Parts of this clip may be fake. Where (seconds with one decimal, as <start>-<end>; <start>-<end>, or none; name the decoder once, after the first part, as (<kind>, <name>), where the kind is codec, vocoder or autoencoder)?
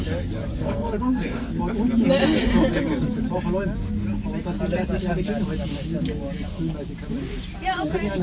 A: 0.6-1.6 (codec, SNAC)